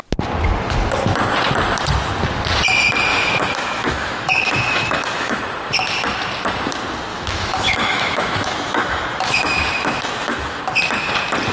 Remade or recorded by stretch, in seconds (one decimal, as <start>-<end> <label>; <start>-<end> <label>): 0.0-3.1 recorded; 3.1-5.4 remade; 5.4-7.1 recorded; 7.1-10.6 remade; 10.6-11.5 recorded